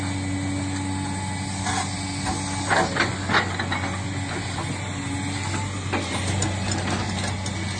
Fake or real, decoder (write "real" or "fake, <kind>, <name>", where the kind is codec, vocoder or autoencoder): real